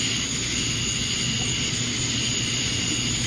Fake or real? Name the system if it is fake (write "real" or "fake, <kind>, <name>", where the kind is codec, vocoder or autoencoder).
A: real